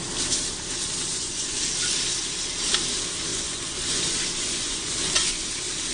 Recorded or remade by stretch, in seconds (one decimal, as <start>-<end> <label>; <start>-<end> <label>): 0.0-1.1 recorded; 1.1-1.6 remade; 1.6-3.3 recorded; 3.3-5.5 remade; 5.5-5.9 recorded